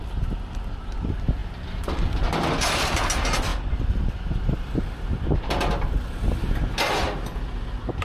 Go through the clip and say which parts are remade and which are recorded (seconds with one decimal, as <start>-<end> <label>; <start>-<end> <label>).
0.0-8.0 recorded